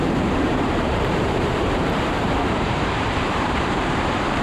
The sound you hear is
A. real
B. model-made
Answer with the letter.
B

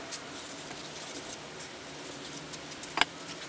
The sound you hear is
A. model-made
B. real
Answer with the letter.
B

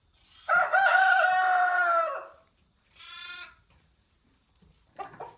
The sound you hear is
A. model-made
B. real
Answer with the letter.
A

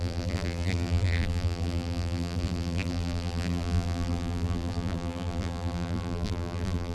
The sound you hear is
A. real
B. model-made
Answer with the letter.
B